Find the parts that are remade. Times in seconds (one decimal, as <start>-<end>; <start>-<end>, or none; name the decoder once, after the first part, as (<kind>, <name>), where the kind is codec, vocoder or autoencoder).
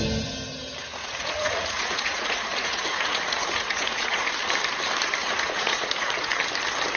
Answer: 0.9-4.3 (vocoder, Vocos); 5.2-6.3